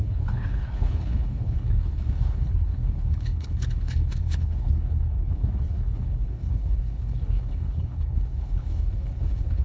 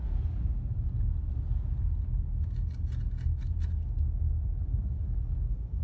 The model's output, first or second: first